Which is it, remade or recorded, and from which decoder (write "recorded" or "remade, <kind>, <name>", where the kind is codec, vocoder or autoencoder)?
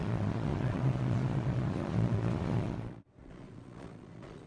remade, vocoder, Vocos